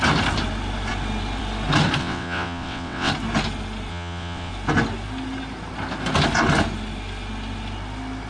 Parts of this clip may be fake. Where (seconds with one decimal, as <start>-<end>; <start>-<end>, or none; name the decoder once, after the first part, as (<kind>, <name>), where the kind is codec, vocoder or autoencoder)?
2.0-3.1 (vocoder, WaveNeXt); 3.9-4.5